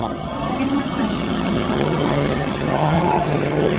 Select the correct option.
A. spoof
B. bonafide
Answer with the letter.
A